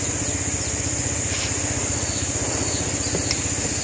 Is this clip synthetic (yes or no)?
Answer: no